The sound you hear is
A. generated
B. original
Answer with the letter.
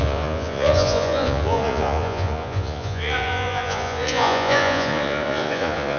A